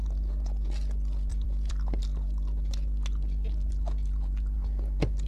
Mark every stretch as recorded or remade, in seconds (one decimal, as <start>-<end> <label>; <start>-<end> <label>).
0.0-1.3 recorded; 1.3-2.0 remade; 2.0-5.3 recorded